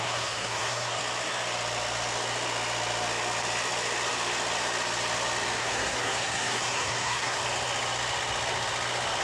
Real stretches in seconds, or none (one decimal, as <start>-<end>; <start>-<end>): 1.0-5.6; 7.4-9.2

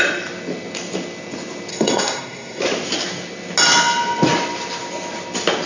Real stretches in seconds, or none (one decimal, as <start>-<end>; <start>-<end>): 0.0-1.7; 2.6-5.7

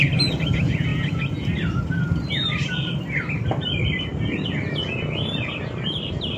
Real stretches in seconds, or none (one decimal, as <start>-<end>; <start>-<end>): 0.0-6.4

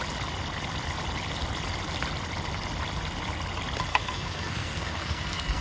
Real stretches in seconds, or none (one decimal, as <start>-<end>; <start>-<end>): 0.0-3.9

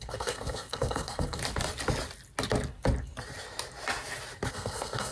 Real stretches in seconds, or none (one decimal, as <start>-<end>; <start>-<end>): 1.4-4.5

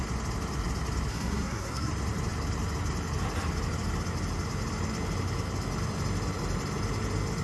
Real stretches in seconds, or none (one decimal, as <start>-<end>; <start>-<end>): 0.0-1.1; 1.9-7.4